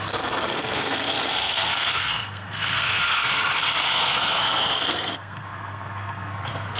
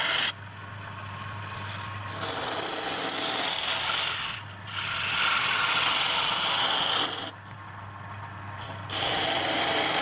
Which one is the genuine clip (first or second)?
second